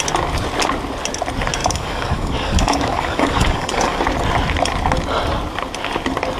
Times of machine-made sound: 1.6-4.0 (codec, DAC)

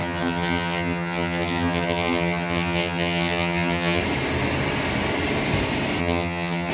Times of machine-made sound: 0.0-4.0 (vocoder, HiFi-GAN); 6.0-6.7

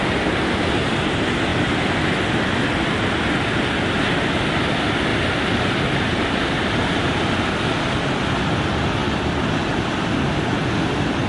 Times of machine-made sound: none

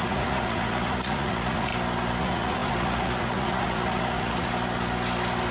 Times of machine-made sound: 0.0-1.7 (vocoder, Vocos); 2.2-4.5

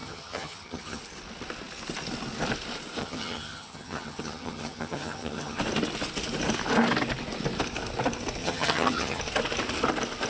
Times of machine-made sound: 0.0-1.0 (vocoder, HiFi-GAN); 3.0-5.6; 8.4-9.2